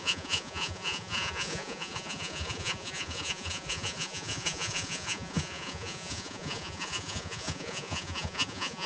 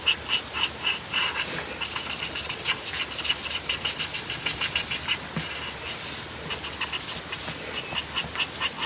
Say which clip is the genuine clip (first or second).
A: second